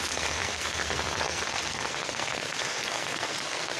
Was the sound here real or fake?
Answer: fake